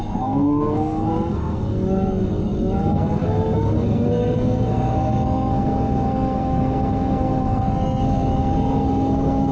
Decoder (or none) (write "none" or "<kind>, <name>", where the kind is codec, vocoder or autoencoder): codec, SNAC